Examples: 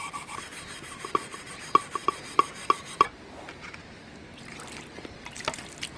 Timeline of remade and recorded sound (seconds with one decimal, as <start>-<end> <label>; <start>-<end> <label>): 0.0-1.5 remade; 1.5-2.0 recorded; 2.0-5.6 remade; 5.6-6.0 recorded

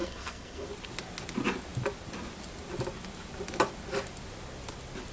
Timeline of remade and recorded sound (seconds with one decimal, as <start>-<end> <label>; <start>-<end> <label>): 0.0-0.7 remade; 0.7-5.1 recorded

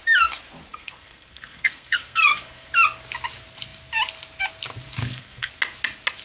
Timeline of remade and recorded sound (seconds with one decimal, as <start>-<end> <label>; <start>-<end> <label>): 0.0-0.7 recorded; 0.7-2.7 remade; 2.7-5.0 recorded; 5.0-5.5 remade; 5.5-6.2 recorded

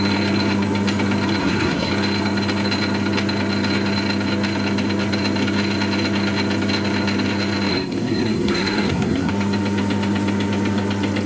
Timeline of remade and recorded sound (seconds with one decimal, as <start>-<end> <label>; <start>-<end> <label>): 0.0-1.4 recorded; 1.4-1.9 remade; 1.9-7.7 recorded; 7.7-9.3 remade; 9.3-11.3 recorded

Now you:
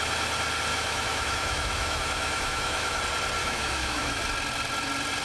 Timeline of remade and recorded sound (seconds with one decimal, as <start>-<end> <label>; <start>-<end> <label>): 0.0-0.7 recorded; 0.7-3.0 remade; 3.0-3.4 recorded; 3.4-4.2 remade; 4.2-5.2 recorded

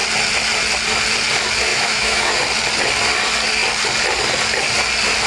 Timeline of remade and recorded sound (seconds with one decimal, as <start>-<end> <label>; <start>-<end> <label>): 0.0-1.7 recorded; 1.7-2.4 remade; 2.4-5.3 recorded